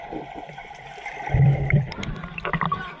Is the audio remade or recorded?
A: remade